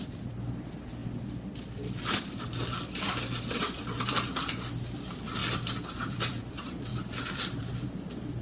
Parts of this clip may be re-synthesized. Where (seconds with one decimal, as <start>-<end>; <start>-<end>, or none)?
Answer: 0.0-6.9; 7.6-8.4